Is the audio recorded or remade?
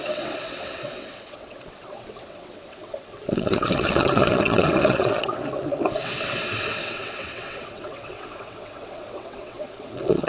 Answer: remade